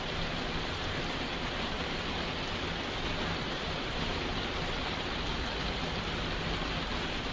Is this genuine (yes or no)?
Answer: yes